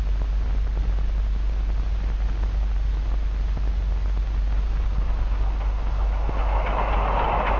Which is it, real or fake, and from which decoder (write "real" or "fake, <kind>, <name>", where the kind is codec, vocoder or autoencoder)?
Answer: real